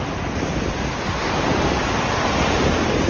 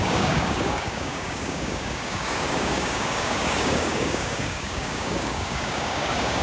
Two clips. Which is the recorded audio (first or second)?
first